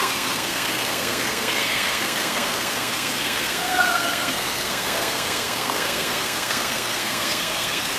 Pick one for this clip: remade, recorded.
remade